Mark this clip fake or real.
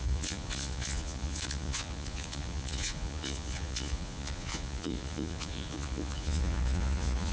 fake